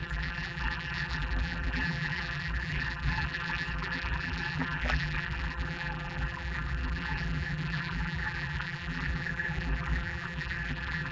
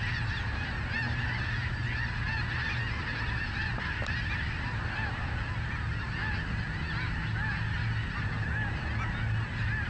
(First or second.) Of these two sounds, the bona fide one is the second